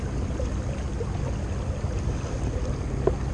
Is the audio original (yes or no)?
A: yes